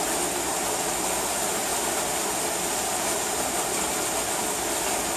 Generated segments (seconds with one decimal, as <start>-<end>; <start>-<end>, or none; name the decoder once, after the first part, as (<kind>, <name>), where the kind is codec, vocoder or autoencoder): none